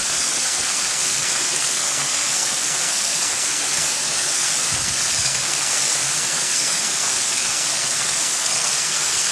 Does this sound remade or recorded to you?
remade